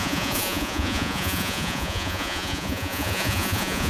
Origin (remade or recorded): remade